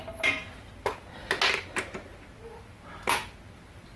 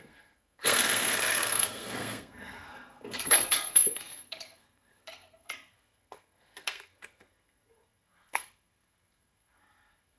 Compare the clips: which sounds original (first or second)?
first